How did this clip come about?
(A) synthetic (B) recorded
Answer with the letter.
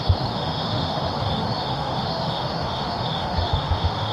A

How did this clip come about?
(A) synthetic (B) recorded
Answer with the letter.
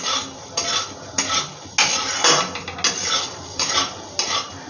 B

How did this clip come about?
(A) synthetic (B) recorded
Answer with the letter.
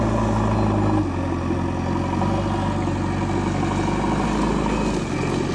B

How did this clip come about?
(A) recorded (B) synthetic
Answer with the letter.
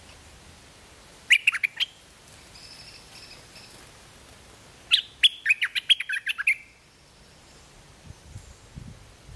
A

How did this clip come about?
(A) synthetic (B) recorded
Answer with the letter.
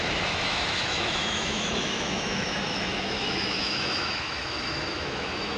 A